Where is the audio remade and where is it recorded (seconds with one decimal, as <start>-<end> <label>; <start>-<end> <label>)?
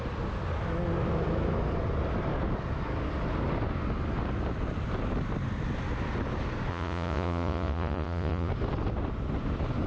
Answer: 0.0-6.7 recorded; 6.7-8.5 remade; 8.5-9.9 recorded